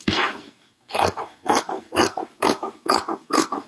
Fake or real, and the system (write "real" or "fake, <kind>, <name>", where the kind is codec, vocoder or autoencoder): fake, codec, SNAC